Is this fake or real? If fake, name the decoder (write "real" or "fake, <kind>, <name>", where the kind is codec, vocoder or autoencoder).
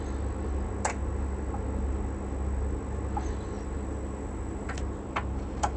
real